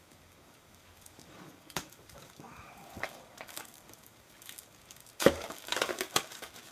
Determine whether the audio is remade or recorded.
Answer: remade